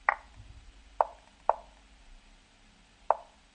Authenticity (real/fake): real